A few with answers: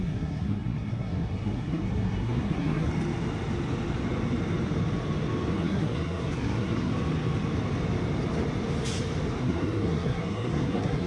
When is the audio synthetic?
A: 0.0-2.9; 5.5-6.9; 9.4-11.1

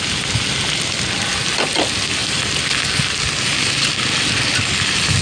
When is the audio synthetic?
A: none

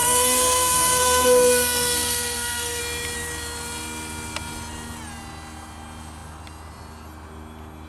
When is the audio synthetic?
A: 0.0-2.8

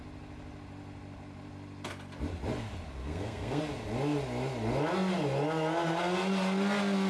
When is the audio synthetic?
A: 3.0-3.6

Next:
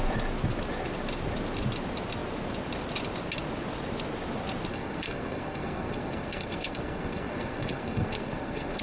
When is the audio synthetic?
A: 4.7-8.8

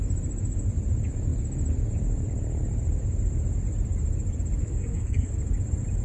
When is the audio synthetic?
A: 4.6-5.3

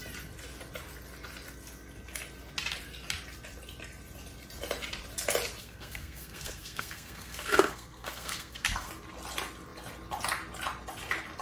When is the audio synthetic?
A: 5.6-8.9

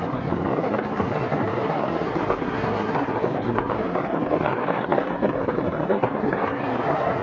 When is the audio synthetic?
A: 0.0-7.2